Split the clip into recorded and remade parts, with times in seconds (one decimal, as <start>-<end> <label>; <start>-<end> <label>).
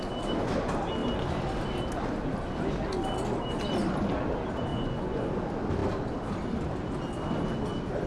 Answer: 0.0-4.7 recorded; 4.7-5.3 remade; 5.3-8.1 recorded